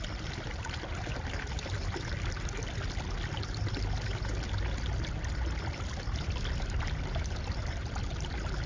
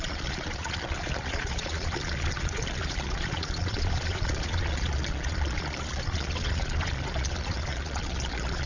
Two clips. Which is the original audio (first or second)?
first